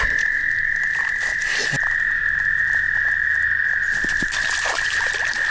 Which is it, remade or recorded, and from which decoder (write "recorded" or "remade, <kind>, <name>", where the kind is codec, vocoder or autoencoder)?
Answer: recorded